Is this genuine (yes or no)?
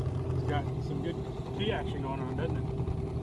yes